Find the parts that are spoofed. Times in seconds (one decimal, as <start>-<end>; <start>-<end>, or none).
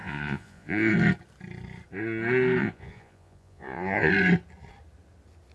0.0-0.9; 2.6-4.1